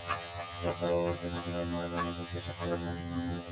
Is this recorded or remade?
remade